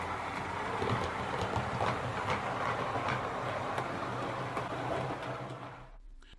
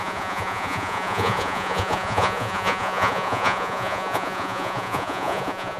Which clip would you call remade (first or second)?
second